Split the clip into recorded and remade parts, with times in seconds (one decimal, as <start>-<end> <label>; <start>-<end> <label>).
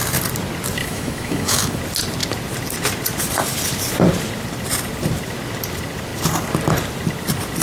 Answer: 0.0-0.8 recorded; 0.8-1.8 remade; 1.8-7.6 recorded